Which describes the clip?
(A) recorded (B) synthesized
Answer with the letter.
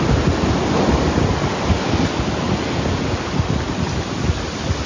A